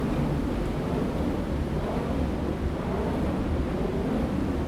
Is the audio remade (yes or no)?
no